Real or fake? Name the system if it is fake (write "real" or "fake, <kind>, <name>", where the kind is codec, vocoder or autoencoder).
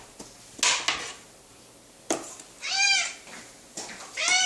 real